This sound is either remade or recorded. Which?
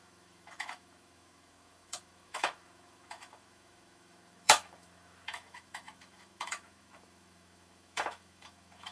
remade